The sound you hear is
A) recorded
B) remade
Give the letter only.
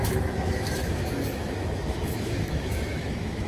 B